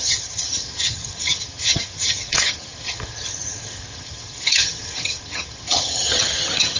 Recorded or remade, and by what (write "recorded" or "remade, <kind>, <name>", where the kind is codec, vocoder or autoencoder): remade, vocoder, HiFi-GAN